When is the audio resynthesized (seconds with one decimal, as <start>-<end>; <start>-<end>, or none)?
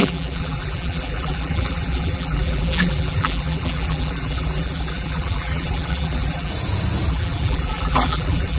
0.0-6.5; 7.1-8.6